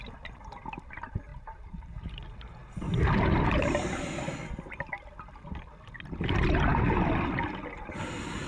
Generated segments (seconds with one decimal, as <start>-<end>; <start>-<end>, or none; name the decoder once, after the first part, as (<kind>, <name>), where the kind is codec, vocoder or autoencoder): 1.3-2.2 (vocoder, BigVGAN v2)